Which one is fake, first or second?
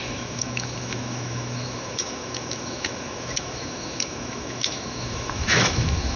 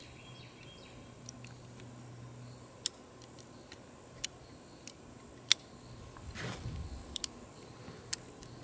first